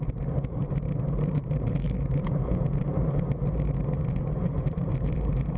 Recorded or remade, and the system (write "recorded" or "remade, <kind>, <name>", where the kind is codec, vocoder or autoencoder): remade, vocoder, BigVGAN v2